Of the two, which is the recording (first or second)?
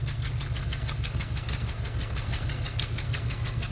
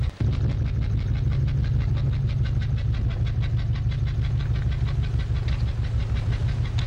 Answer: second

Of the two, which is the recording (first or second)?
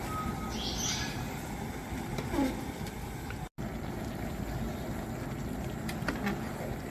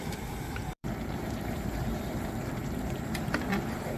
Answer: first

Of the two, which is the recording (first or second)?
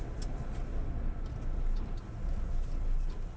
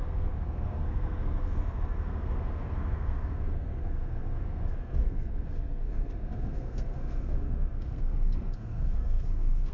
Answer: first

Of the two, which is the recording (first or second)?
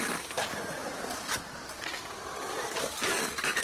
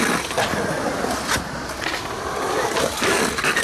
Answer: second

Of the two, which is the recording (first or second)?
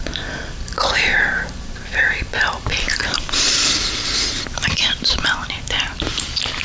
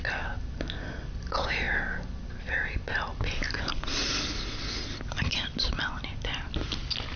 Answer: second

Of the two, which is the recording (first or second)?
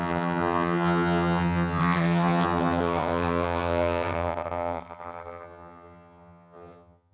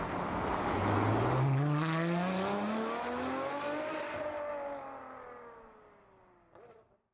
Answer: second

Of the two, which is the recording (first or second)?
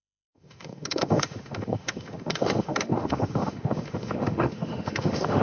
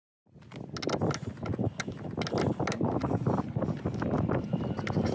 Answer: second